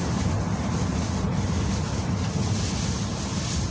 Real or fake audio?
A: real